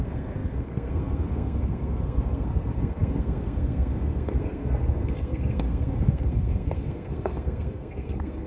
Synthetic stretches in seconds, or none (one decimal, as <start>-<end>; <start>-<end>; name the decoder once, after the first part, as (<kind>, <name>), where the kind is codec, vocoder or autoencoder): 0.0-8.5 (codec, SNAC)